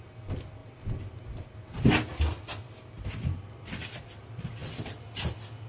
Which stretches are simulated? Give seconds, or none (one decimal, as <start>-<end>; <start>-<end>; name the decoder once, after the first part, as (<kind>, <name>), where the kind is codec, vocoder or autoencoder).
none